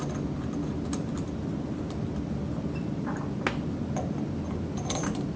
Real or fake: real